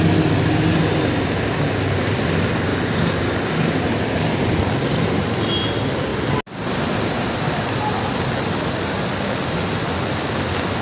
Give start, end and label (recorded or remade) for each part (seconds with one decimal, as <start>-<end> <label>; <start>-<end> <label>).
0.0-10.8 recorded